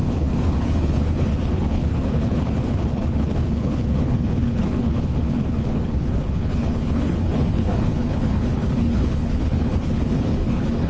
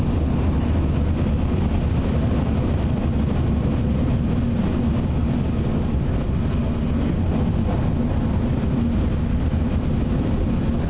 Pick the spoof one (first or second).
first